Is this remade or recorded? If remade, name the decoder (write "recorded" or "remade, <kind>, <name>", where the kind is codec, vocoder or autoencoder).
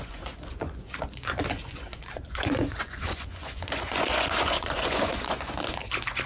remade, vocoder, Vocos